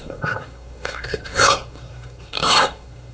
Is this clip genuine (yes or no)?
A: no